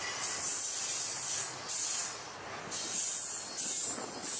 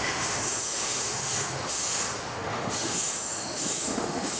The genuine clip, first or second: first